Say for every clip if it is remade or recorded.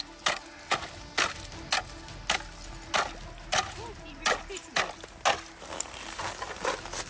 recorded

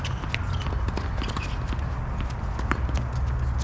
recorded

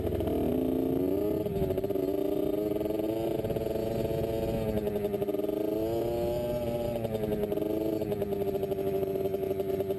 recorded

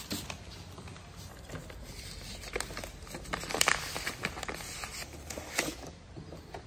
recorded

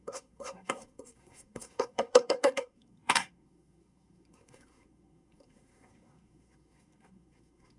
remade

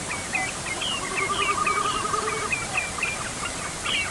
recorded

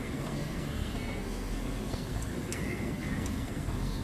remade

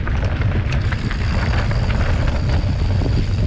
recorded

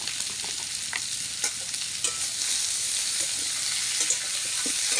recorded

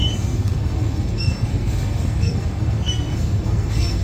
remade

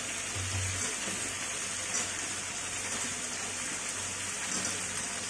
recorded